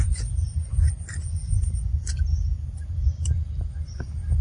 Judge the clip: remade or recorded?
remade